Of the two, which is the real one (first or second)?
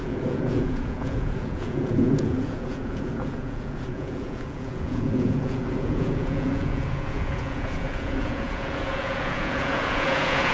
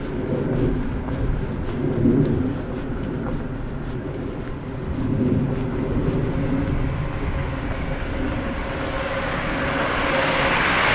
second